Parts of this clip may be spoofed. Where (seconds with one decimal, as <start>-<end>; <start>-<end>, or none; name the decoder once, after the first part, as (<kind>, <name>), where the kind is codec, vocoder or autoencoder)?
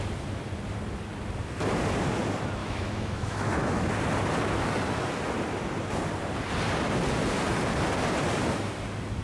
2.6-3.9 (autoencoder, DAC-VAE)